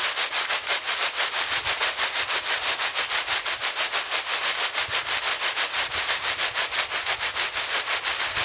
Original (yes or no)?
yes